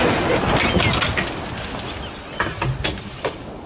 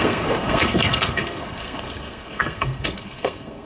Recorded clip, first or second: first